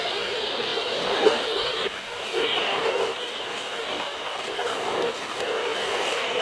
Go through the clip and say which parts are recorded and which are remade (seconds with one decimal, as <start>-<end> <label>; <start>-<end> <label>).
0.0-6.4 remade